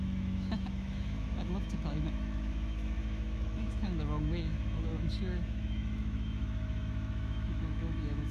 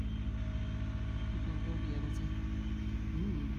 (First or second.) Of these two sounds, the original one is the second